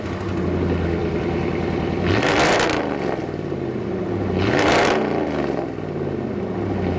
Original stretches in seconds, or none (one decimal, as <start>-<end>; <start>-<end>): 0.0-1.0; 4.1-7.0